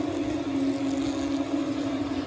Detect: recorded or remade recorded